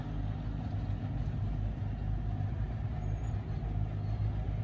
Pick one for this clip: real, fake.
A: real